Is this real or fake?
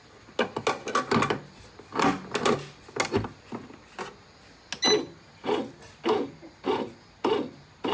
real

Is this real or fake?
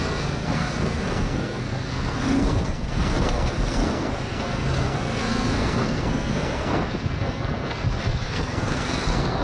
fake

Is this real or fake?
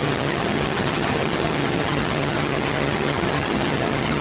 fake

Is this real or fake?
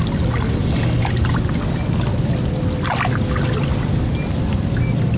real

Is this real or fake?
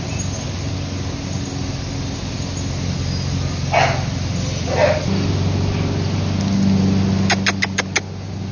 real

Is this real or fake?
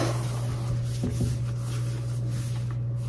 real